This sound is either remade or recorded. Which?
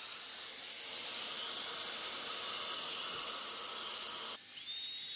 recorded